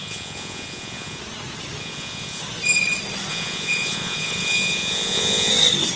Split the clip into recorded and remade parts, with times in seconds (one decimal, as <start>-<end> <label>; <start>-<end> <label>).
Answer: 0.0-1.2 remade; 1.2-1.8 recorded; 1.8-2.4 remade; 2.4-3.3 recorded; 3.3-5.5 remade; 5.5-6.0 recorded